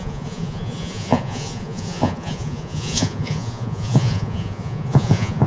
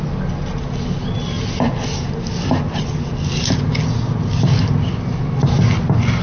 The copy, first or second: first